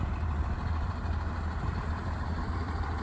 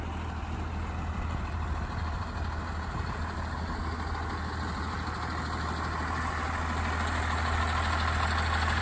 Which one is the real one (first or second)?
second